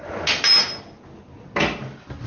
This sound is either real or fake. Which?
real